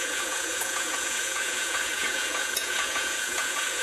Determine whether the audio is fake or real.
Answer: fake